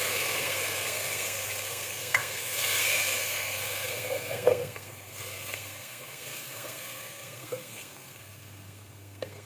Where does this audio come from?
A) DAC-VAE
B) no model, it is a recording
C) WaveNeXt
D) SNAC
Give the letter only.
D